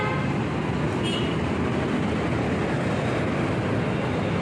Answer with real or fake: real